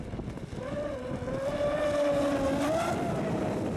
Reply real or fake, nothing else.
real